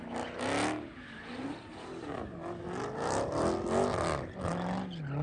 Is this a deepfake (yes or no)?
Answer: no